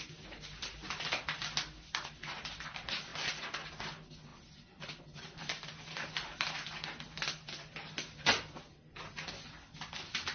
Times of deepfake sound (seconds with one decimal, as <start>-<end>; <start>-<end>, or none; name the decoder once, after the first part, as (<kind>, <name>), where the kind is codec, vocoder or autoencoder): none